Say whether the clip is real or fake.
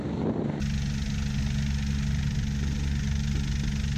real